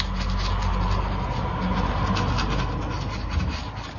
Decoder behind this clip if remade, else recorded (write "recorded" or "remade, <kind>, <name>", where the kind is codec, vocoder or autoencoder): recorded